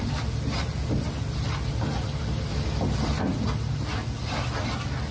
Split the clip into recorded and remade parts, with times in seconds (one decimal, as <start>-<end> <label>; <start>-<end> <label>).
0.0-5.1 recorded